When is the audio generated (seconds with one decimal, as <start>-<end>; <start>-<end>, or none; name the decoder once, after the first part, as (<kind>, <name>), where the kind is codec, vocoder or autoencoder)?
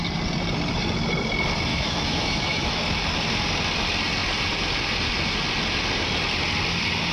1.7-2.8 (autoencoder, DAC-VAE)